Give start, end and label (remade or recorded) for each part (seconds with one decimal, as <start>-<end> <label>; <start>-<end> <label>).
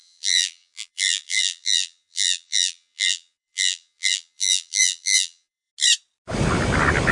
0.0-5.7 remade; 5.7-7.1 recorded